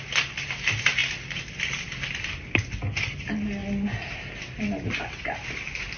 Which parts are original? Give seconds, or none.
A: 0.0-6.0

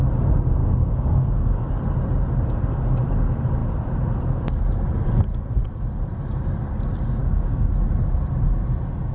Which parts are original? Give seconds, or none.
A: 0.0-0.6; 1.8-7.2; 7.7-9.1

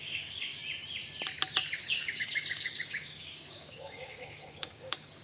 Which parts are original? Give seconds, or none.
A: 0.6-1.8